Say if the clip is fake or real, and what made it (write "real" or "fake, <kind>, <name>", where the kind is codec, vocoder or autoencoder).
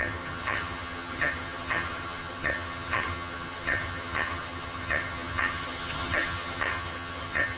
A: fake, vocoder, HiFi-GAN